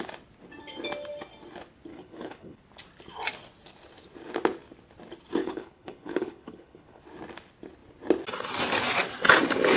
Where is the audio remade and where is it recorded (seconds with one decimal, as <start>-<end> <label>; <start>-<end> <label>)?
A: 0.0-1.9 recorded; 1.9-2.6 remade; 2.6-5.4 recorded; 5.4-7.0 remade; 7.0-9.8 recorded